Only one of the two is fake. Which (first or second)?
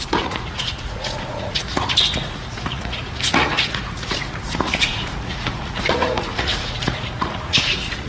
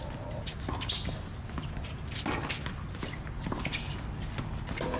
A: first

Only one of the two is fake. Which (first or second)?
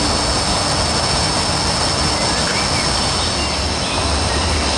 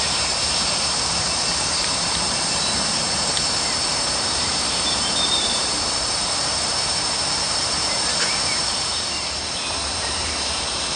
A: second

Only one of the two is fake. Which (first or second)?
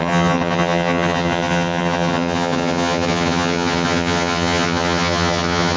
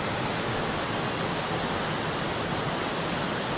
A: first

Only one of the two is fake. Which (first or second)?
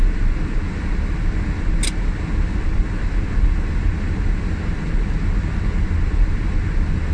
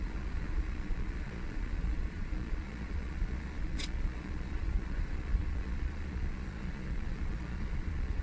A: second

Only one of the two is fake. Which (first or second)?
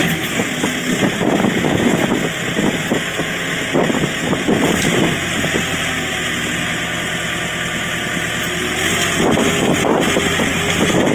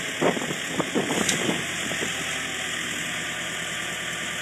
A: second